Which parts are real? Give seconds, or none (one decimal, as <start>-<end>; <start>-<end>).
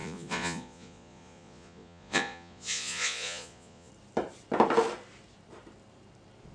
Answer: 3.9-6.5